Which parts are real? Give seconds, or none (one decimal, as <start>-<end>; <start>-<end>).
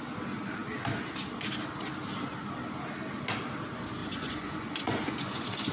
0.0-4.0